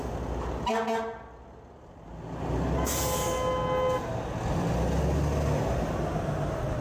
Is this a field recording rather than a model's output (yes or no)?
yes